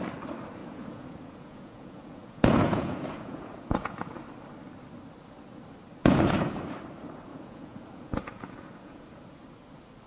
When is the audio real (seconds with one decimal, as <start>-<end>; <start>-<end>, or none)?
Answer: 0.0-0.6; 4.2-6.0; 6.6-7.3; 9.1-10.1